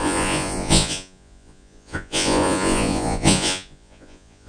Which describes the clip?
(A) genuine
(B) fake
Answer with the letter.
B